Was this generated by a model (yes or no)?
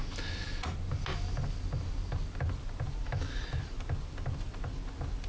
no